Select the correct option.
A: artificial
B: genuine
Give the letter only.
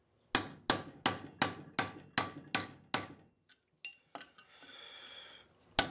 B